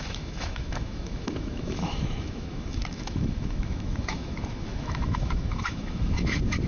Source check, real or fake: fake